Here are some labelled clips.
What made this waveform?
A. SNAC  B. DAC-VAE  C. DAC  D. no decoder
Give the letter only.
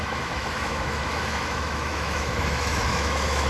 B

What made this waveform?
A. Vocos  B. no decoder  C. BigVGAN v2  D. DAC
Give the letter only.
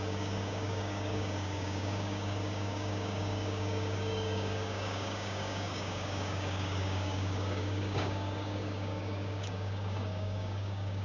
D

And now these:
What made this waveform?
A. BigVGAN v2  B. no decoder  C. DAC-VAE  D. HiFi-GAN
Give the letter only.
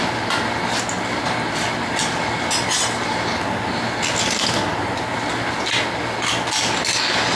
B